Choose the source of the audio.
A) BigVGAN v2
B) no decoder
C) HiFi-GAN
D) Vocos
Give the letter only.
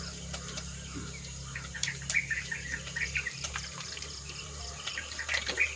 A